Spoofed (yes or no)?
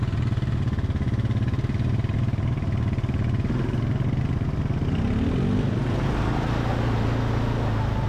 no